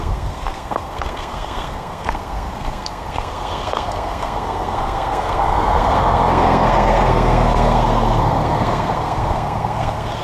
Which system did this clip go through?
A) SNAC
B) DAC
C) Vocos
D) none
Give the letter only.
A